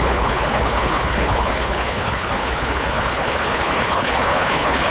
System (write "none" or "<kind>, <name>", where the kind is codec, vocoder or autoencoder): codec, HILCodec